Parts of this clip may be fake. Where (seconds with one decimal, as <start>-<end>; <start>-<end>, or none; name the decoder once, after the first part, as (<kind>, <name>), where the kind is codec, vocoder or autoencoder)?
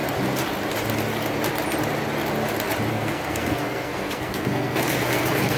2.9-5.6 (codec, SNAC)